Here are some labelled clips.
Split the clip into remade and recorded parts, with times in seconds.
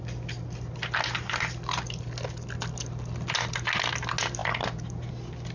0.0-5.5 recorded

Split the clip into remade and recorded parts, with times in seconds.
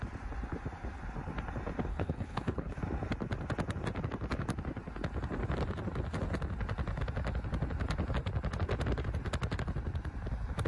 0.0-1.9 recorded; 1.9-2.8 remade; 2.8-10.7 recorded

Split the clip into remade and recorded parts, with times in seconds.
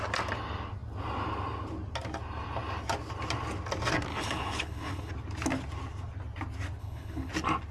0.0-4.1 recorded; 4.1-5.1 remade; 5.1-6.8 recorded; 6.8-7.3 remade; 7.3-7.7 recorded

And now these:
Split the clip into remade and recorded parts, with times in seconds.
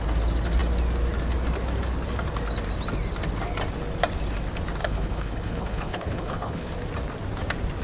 0.0-4.8 recorded; 4.8-6.7 remade; 6.7-7.8 recorded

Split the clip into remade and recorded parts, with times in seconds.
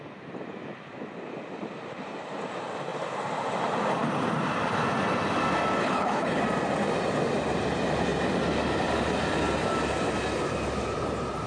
0.0-5.8 recorded; 5.8-6.4 remade; 6.4-11.5 recorded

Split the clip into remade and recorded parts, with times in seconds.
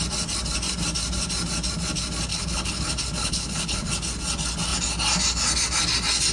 0.0-2.3 recorded; 2.3-2.8 remade; 2.8-3.2 recorded; 3.2-3.9 remade; 3.9-6.3 recorded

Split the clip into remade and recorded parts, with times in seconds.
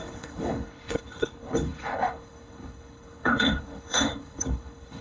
0.0-5.0 remade